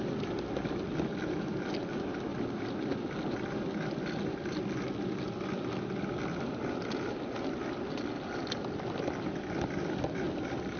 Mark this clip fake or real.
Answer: real